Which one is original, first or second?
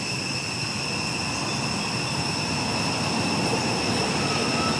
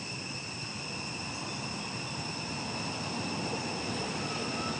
first